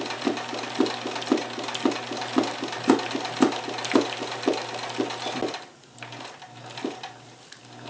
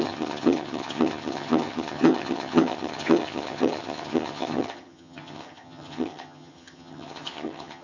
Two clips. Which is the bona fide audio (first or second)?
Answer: first